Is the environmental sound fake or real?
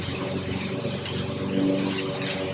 real